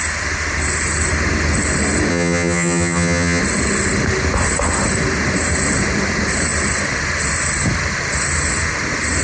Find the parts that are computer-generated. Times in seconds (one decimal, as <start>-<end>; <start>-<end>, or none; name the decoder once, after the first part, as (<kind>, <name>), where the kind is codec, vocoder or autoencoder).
2.1-3.4 (vocoder, HiFi-GAN)